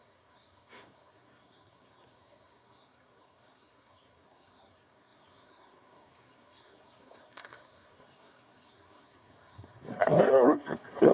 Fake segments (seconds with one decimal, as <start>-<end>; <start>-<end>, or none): 0.0-11.1